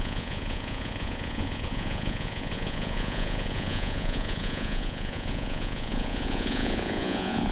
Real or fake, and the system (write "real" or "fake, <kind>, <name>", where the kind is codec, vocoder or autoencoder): fake, vocoder, Vocos